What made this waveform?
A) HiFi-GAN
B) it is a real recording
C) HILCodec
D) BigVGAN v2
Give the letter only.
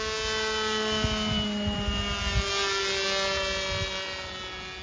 B